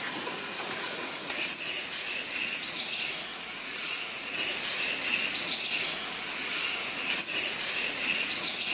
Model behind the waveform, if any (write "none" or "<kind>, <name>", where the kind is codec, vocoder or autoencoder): vocoder, Vocos